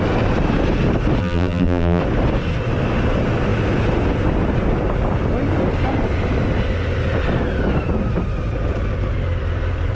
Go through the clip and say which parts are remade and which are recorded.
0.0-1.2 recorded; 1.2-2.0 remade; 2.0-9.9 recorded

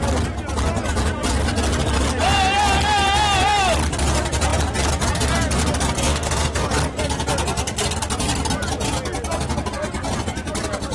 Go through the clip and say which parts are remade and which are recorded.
0.0-6.1 recorded; 6.1-6.6 remade; 6.6-10.9 recorded

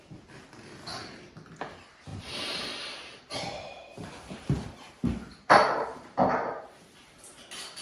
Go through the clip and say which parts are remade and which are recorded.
0.0-2.1 recorded; 2.1-6.8 remade; 6.8-7.8 recorded

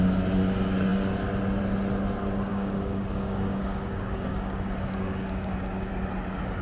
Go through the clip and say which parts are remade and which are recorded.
0.0-2.5 recorded; 2.5-5.9 remade; 5.9-6.6 recorded